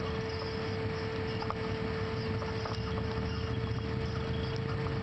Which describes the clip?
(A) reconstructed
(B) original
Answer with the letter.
B